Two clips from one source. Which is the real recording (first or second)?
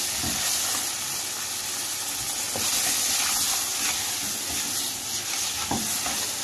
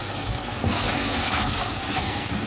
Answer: first